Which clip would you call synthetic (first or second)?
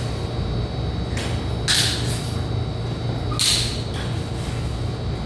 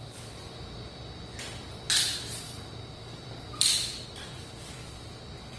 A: second